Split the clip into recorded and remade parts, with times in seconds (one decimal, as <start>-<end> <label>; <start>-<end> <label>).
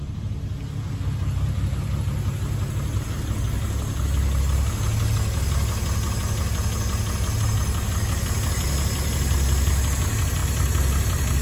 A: 0.0-11.4 recorded